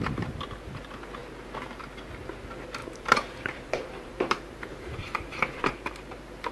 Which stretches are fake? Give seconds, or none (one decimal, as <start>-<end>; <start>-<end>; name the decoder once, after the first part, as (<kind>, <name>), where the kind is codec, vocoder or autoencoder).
2.8-5.7 (vocoder, BigVGAN v2)